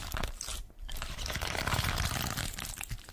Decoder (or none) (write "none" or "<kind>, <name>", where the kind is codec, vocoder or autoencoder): vocoder, BigVGAN v2